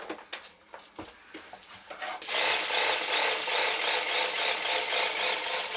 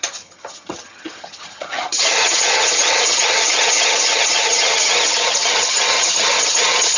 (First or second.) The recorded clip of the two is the first